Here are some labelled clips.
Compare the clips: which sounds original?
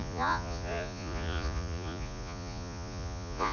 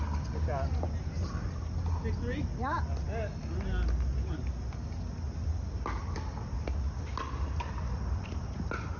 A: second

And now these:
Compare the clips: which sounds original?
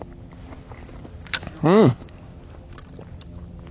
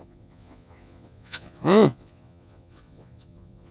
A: first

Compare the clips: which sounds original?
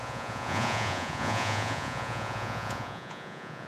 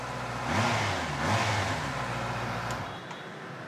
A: second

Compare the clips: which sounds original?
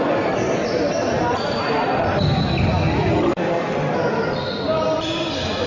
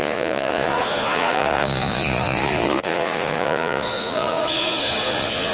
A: first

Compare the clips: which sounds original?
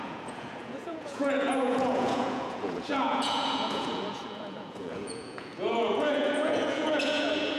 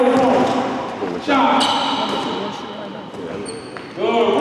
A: second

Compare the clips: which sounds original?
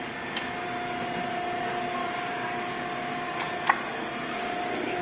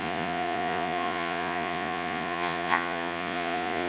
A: first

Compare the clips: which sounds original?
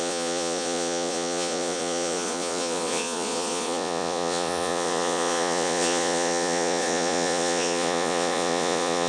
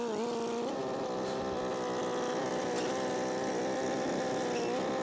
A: second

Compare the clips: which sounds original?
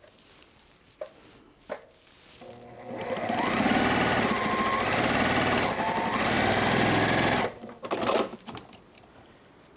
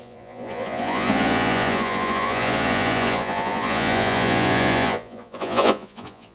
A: first